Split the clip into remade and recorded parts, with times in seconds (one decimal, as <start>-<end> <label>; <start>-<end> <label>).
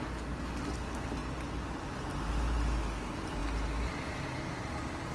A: 0.0-5.1 recorded